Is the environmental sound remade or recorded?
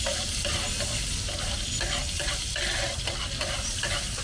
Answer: recorded